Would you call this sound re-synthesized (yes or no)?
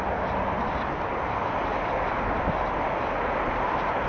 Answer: no